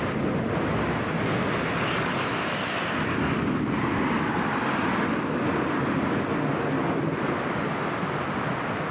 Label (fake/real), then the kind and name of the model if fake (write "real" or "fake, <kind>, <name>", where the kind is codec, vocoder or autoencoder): real